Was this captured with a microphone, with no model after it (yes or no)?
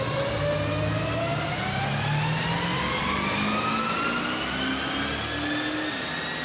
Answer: yes